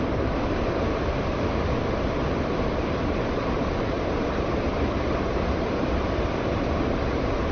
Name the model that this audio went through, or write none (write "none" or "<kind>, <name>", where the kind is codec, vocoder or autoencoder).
vocoder, BigVGAN v2